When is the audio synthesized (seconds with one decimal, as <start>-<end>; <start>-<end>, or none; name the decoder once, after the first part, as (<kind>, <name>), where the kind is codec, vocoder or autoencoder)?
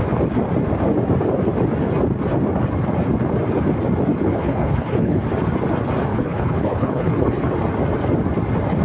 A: 4.3-5.2 (codec, HILCodec); 6.1-7.5